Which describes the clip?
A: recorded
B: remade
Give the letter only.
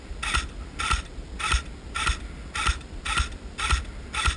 A